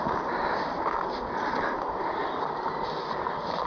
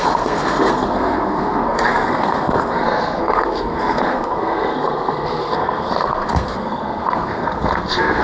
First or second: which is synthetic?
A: second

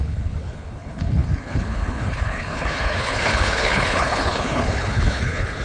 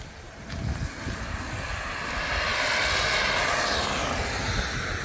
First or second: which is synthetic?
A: first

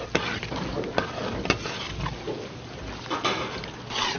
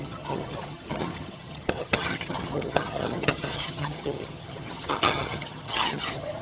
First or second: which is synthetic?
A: second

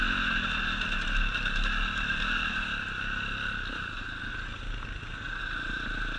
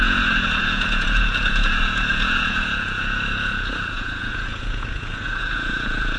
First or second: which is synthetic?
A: second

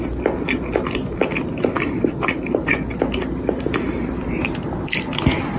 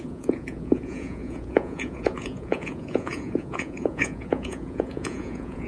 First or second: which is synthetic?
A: second